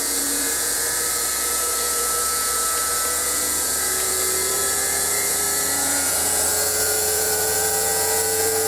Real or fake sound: fake